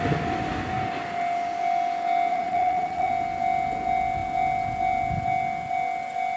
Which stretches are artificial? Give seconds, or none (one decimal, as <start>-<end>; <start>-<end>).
2.3-3.1